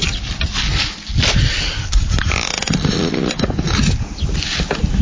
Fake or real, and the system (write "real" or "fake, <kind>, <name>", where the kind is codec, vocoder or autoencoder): real